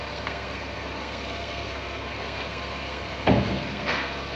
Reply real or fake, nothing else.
fake